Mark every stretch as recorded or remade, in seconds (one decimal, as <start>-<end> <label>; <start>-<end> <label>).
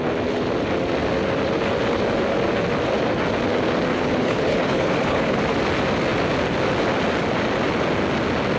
0.0-3.9 recorded; 3.9-5.4 remade; 5.4-8.6 recorded